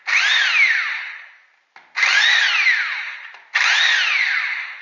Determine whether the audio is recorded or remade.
recorded